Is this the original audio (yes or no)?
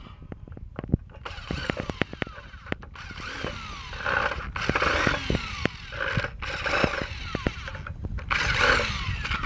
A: yes